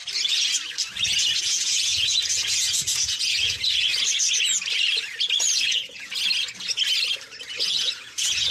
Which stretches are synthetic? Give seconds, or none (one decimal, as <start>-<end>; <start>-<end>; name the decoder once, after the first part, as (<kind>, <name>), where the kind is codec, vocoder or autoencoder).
1.4-3.9 (vocoder, Vocos); 5.6-6.1; 7.6-8.5